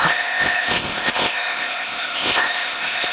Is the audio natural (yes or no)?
no